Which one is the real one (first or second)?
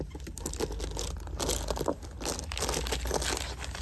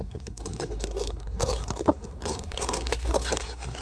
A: first